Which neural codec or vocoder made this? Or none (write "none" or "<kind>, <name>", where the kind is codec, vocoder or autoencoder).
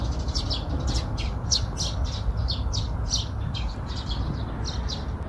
none